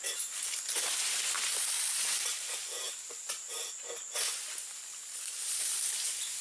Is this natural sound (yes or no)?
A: yes